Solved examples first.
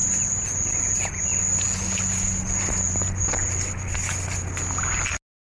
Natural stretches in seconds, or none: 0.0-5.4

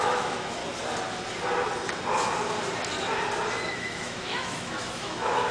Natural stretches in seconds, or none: 0.6-3.7

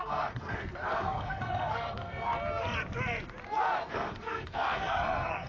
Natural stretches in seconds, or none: 2.3-3.8

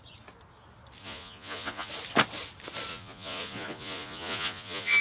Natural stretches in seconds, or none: 0.0-1.0; 1.9-2.9

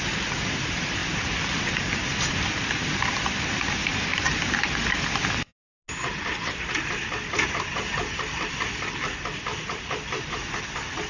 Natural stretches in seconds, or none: 0.0-11.1